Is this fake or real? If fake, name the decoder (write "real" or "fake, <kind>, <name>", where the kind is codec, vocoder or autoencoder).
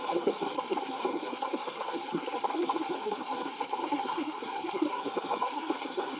fake, codec, SNAC